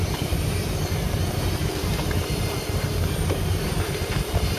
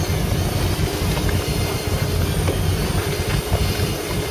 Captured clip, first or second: second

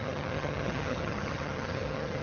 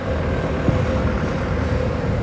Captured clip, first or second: second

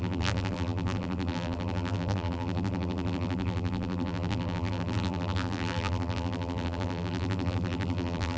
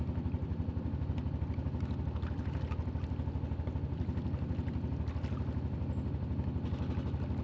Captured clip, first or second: second